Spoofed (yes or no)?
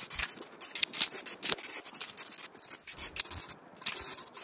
no